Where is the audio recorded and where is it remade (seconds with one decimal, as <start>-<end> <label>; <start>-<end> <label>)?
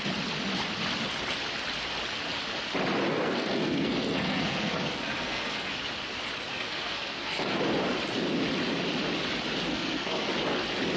0.0-3.1 recorded; 3.1-5.7 remade; 5.7-6.5 recorded; 6.5-7.6 remade; 7.6-9.7 recorded; 9.7-10.3 remade; 10.3-11.0 recorded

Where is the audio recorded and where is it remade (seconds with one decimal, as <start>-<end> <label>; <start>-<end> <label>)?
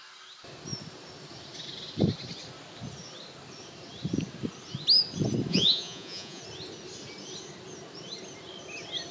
0.0-5.5 recorded; 5.5-6.4 remade; 6.4-9.1 recorded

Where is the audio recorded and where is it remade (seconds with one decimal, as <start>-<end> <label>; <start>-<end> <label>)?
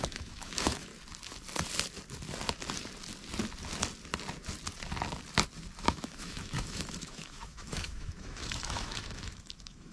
0.0-0.9 remade; 0.9-5.8 recorded; 5.8-9.9 remade